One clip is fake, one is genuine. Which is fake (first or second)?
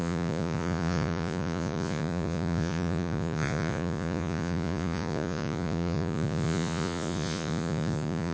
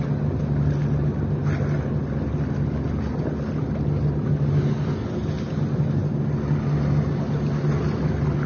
first